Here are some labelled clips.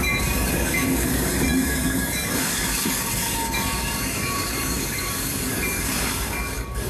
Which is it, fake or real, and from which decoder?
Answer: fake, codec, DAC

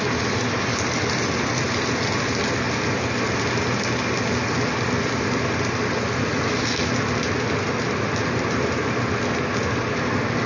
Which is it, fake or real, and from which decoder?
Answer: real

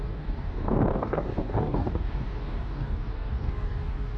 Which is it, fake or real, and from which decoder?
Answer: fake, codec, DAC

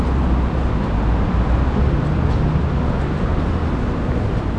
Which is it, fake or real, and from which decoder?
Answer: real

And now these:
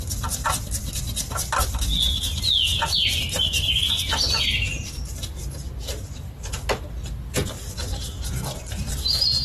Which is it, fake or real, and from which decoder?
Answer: real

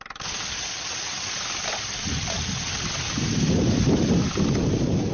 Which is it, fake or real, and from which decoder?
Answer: real